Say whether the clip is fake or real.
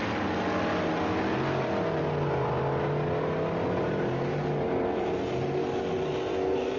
real